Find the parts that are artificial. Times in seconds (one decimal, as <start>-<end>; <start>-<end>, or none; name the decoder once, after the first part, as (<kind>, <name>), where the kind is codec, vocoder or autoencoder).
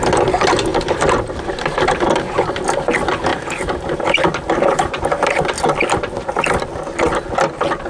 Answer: none